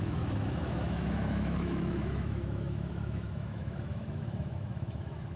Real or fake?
fake